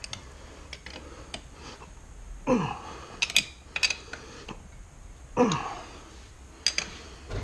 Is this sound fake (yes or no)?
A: no